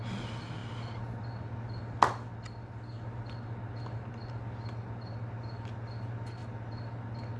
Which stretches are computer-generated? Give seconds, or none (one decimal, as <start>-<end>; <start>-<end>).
none